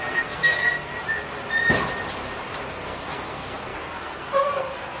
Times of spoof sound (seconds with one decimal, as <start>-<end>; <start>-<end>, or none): 0.0-0.9; 2.7-5.0